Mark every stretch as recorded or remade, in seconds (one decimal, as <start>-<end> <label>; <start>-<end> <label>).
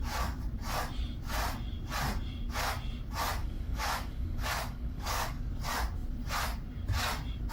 0.0-3.4 recorded; 3.4-5.5 remade; 5.5-7.5 recorded